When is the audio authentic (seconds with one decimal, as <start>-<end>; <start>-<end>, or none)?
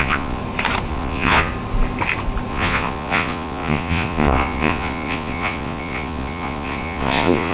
0.4-0.9; 1.5-2.5